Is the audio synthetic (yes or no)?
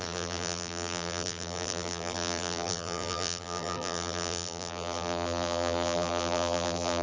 yes